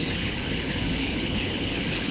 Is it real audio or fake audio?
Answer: fake